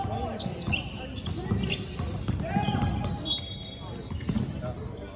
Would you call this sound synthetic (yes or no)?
no